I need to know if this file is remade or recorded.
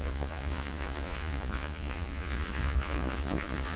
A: remade